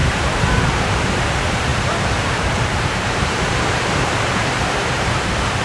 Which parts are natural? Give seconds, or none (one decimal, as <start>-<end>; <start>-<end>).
1.2-1.7; 5.1-5.6